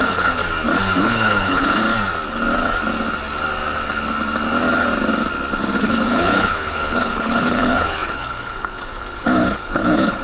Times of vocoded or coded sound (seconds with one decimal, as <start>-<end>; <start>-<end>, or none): 0.0-0.4; 1.0-1.8; 5.8-10.2